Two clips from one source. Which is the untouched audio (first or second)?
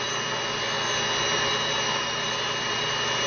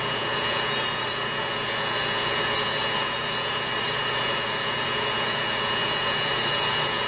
first